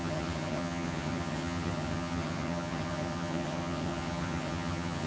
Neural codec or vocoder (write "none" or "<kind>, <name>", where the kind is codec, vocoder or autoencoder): vocoder, HiFi-GAN